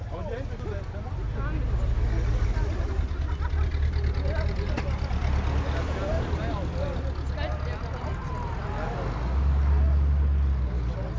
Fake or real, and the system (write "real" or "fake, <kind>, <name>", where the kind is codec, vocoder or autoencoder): real